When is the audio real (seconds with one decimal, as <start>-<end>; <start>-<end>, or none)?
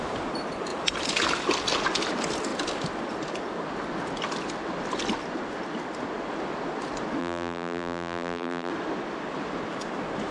0.0-7.2; 8.7-10.3